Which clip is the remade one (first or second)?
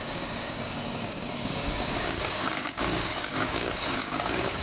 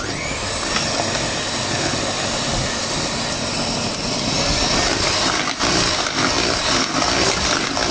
first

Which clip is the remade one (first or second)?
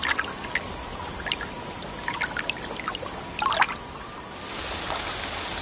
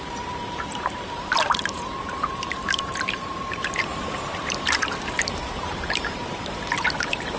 second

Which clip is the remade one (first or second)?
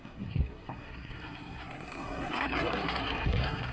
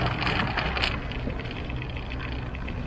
first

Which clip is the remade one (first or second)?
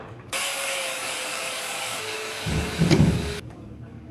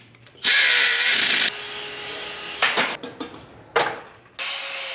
first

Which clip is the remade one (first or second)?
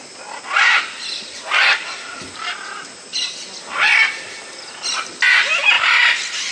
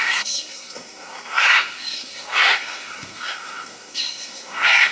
second